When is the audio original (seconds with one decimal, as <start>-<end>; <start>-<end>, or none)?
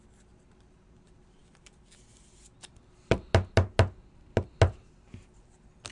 0.0-5.9